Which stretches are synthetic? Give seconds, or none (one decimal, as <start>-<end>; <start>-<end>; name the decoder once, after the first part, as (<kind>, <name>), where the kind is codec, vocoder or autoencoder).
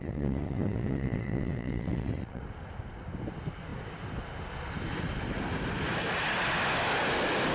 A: 0.0-2.4 (vocoder, WaveNeXt)